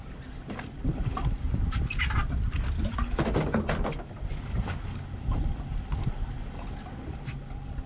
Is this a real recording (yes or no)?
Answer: yes